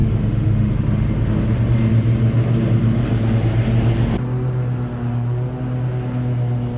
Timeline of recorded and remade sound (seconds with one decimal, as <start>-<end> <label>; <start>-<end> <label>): 0.0-0.7 remade; 0.7-6.8 recorded